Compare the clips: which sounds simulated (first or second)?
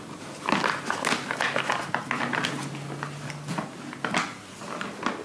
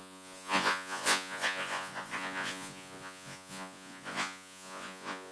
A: second